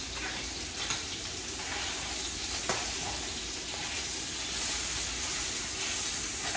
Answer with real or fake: real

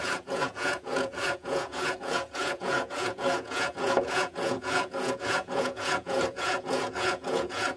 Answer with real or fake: fake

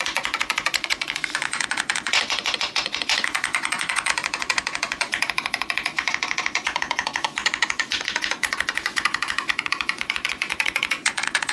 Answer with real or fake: fake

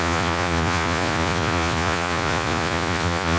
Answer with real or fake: fake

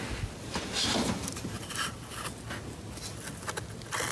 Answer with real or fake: real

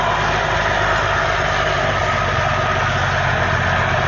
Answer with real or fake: real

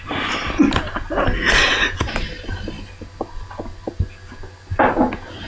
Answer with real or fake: real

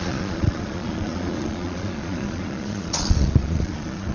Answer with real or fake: fake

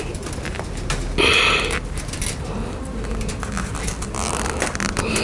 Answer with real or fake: real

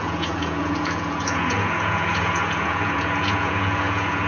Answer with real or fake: fake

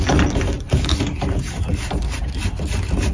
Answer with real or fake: real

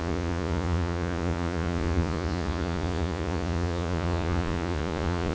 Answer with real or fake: fake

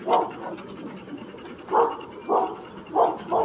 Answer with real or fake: real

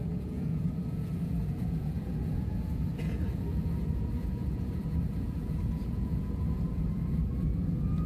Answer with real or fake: fake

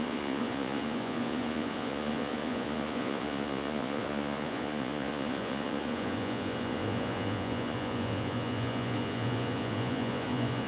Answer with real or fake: fake